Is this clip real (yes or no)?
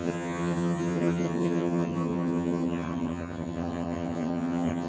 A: no